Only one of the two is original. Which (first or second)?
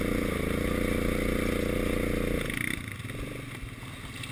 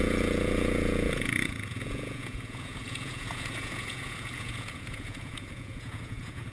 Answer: first